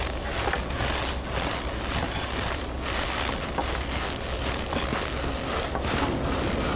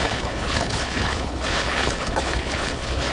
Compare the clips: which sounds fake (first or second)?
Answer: second